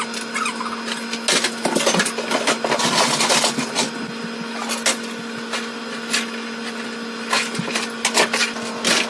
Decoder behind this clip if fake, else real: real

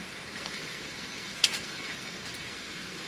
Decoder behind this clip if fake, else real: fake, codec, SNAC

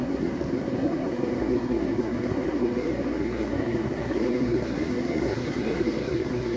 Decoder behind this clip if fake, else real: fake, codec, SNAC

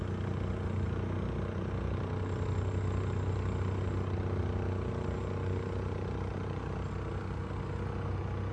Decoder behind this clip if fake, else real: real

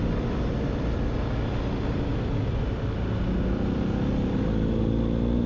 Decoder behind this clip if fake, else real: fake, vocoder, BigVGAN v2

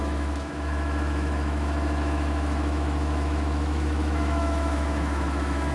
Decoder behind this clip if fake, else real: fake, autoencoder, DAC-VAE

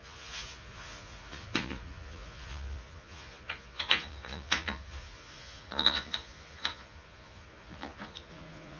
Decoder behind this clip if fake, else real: fake, vocoder, Vocos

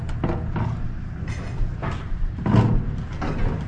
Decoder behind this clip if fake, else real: real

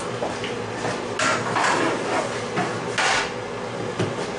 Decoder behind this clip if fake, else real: real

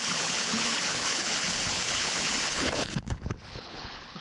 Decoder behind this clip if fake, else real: fake, codec, HILCodec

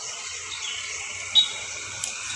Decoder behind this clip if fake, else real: real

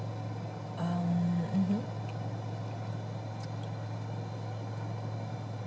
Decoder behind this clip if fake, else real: real